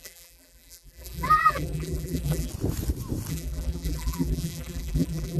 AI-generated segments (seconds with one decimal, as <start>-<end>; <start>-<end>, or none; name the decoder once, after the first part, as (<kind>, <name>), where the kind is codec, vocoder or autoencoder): 0.0-2.5 (vocoder, BigVGAN v2); 3.3-5.4